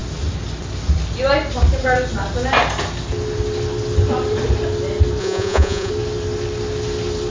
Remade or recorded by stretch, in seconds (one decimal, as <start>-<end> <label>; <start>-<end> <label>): 0.0-5.2 recorded; 5.2-5.9 remade; 5.9-7.3 recorded